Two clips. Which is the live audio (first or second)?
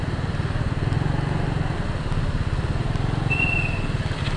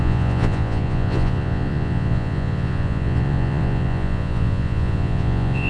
first